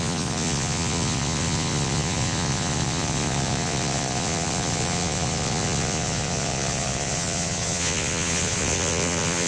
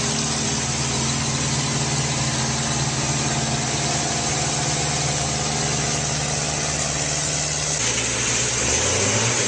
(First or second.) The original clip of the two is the second